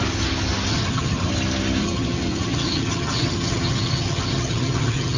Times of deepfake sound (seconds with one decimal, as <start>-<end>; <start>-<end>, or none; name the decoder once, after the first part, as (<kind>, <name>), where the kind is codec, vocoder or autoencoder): 0.7-1.3 (vocoder, HiFi-GAN); 1.8-5.2